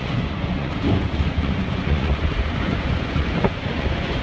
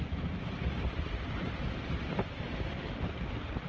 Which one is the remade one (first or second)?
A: first